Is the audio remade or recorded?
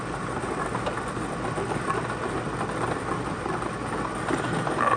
recorded